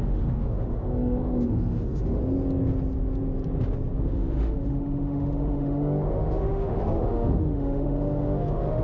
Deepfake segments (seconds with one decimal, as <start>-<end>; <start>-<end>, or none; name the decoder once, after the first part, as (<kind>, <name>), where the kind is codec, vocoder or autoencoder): 0.0-2.2 (autoencoder, DAC-VAE); 4.0-8.8